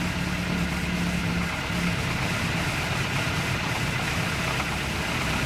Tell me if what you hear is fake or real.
real